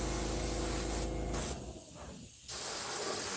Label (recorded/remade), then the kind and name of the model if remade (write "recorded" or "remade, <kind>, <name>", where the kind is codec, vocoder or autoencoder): recorded